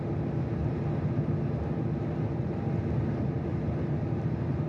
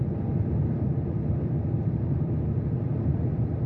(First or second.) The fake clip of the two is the second